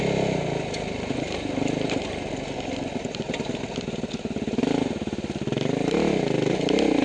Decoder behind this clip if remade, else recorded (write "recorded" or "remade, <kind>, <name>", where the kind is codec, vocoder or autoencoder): recorded